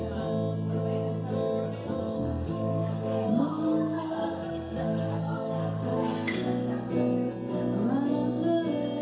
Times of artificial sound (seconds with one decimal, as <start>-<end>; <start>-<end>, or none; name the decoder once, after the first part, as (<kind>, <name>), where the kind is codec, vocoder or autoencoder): 2.0-6.9 (codec, SNAC)